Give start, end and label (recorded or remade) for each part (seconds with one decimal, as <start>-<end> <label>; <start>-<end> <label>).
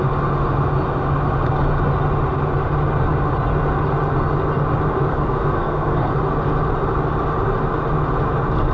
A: 0.0-5.1 recorded; 5.1-6.1 remade; 6.1-8.7 recorded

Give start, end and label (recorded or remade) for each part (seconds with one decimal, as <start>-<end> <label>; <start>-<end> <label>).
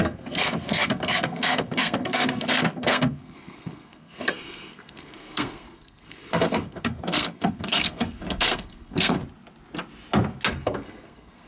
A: 0.0-9.2 remade; 9.2-10.5 recorded; 10.5-11.5 remade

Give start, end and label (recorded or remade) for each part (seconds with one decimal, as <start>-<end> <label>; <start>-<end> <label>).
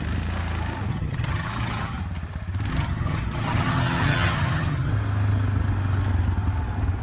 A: 0.0-0.9 recorded; 0.9-2.0 remade; 2.0-2.7 recorded; 2.7-4.9 remade; 4.9-7.0 recorded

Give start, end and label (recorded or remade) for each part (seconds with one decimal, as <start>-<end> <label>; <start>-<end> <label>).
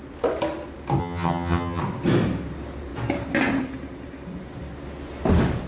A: 0.0-1.0 recorded; 1.0-1.8 remade; 1.8-5.7 recorded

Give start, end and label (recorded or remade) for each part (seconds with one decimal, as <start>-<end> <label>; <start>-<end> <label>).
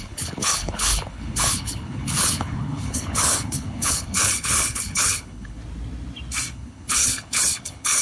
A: 0.0-5.6 remade; 5.6-6.5 recorded; 6.5-8.0 remade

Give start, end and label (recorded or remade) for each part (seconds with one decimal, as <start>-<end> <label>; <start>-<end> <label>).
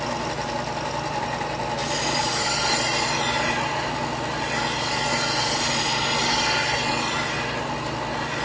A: 0.0-8.4 recorded